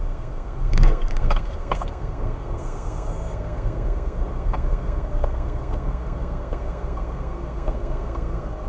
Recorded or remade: remade